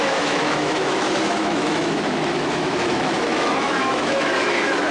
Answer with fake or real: fake